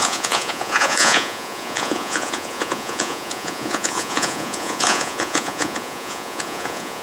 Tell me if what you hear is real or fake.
fake